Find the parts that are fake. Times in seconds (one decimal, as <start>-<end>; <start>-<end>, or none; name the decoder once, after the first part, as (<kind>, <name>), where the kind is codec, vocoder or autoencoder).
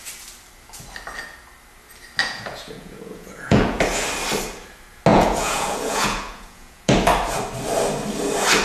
2.2-3.8 (vocoder, Vocos); 5.1-6.9